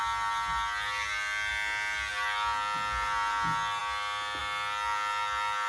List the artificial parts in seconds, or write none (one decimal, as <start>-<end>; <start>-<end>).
none

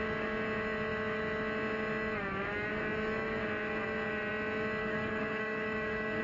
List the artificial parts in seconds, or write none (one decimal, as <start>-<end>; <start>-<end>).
4.8-6.2

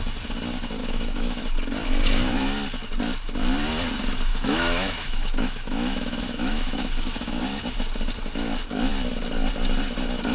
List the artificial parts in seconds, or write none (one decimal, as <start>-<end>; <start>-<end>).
0.8-1.4; 4.3-7.4

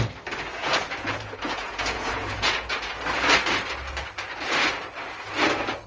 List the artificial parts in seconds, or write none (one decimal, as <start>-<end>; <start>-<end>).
0.6-2.9

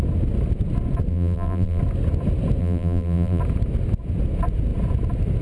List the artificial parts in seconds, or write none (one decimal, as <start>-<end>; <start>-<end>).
1.1-1.8; 2.6-3.4

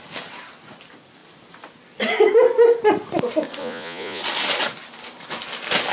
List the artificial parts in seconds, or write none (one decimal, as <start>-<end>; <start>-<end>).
3.6-4.2

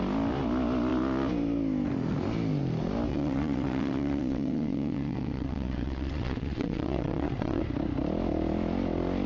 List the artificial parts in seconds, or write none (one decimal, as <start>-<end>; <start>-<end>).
3.1-7.6

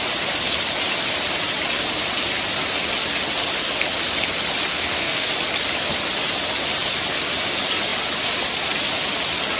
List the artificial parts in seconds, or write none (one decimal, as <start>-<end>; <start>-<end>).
4.7-5.3